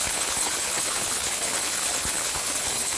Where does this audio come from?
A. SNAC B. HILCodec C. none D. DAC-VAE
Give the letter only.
B